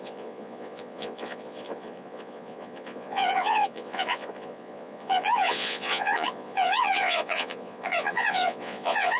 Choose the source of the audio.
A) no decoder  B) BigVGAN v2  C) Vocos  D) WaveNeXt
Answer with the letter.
C